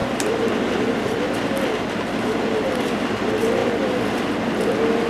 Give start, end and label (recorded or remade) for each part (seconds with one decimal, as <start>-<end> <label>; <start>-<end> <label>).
0.0-5.1 recorded